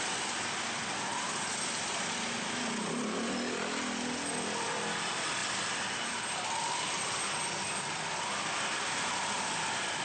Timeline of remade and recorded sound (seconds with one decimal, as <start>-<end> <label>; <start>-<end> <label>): 0.0-10.0 recorded